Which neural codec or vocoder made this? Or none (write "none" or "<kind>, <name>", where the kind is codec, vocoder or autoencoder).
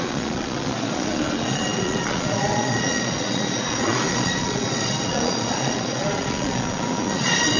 vocoder, Vocos